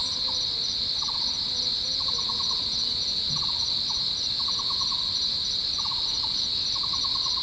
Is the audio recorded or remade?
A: recorded